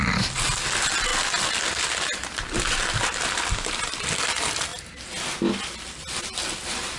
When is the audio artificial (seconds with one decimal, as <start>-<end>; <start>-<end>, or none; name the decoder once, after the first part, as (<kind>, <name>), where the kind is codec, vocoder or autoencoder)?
none